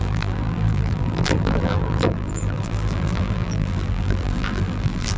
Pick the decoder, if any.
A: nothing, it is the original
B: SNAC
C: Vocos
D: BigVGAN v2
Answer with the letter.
D